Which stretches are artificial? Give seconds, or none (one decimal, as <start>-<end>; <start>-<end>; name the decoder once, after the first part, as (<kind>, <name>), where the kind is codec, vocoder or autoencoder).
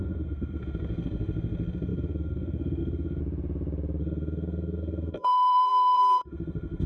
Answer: 0.0-3.2 (codec, SNAC); 4.0-6.9